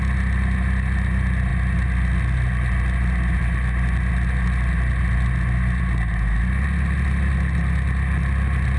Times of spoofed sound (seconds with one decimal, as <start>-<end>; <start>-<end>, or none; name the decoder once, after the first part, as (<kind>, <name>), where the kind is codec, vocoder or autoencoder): none